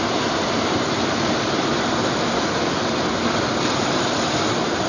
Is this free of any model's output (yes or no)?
no